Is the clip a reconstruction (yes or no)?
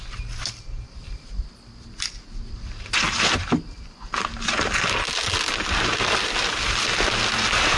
no